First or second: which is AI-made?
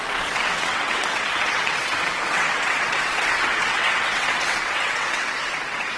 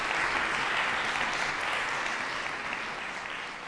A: first